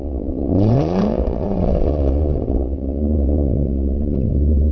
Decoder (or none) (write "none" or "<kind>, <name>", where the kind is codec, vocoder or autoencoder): vocoder, WaveNeXt